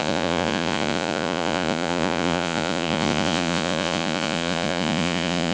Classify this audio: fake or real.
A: fake